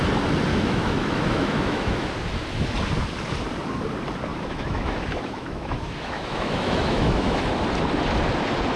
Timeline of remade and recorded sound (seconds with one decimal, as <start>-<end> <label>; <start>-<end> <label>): 0.0-0.5 recorded; 0.5-2.1 remade; 2.1-4.3 recorded; 4.3-7.4 remade; 7.4-8.8 recorded